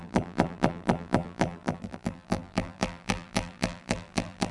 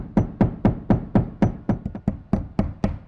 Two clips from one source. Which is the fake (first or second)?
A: first